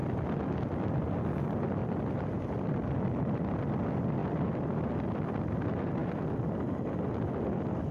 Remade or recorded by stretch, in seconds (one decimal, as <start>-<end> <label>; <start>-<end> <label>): 0.0-1.8 recorded; 1.8-3.0 remade; 3.0-4.2 recorded; 4.2-4.8 remade; 4.8-6.0 recorded; 6.0-7.1 remade; 7.1-7.9 recorded